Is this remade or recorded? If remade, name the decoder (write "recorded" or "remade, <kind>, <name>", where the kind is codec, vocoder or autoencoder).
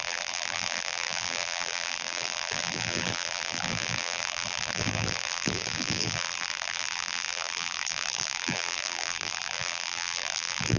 remade, vocoder, BigVGAN v2